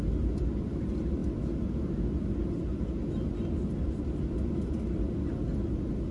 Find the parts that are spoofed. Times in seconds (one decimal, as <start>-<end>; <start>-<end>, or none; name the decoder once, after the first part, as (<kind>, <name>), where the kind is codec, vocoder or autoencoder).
none